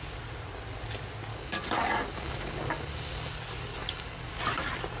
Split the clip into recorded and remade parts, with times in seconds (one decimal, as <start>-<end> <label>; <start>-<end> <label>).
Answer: 0.0-1.3 recorded; 1.3-3.4 remade; 3.4-3.8 recorded; 3.8-4.4 remade; 4.4-5.0 recorded